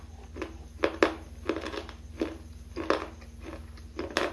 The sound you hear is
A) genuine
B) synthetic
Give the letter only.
A